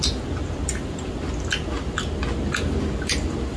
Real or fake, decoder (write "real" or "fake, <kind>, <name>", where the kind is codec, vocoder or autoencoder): real